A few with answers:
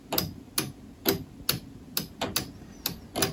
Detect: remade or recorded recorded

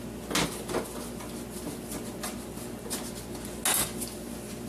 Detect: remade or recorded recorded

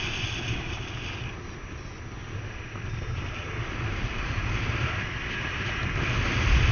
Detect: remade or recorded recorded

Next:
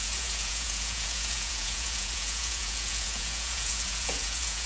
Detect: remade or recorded remade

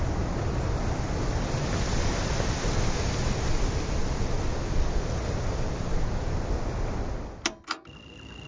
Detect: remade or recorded recorded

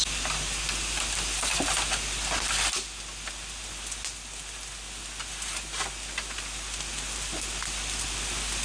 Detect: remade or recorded recorded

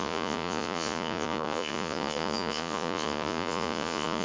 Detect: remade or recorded remade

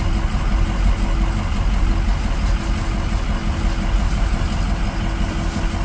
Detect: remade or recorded recorded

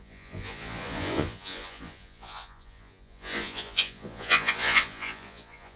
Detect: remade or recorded remade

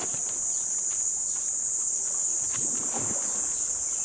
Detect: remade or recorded recorded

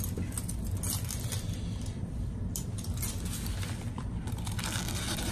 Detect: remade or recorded recorded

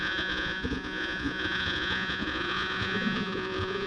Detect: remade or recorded remade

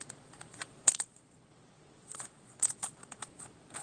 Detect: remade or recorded remade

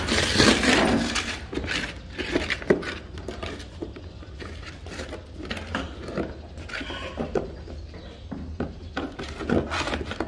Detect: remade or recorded recorded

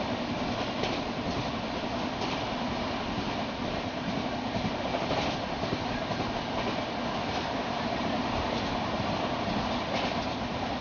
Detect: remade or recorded recorded